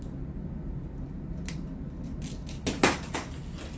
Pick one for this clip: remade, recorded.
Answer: recorded